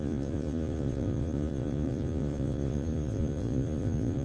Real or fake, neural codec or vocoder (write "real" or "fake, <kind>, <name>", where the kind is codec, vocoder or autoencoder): fake, vocoder, Vocos